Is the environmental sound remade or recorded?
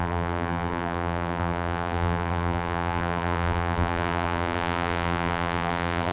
remade